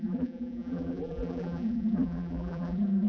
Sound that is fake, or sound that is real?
fake